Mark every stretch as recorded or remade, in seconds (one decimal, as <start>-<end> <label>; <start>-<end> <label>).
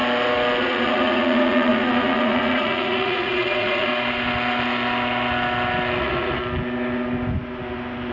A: 0.0-0.6 recorded; 0.6-3.9 remade; 3.9-6.0 recorded; 6.0-6.4 remade; 6.4-8.1 recorded